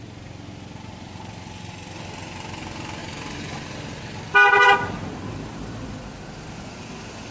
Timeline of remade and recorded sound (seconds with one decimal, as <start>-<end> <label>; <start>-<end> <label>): 0.0-3.0 recorded; 3.0-4.0 remade; 4.0-7.3 recorded